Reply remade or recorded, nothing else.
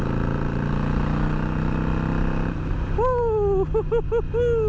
recorded